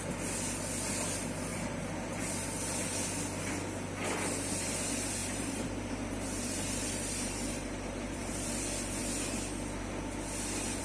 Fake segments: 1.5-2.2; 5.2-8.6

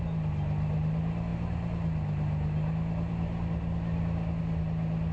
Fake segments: none

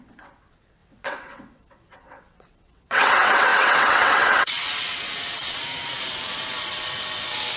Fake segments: 0.0-7.6